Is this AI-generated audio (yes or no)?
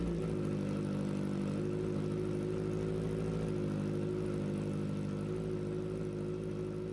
no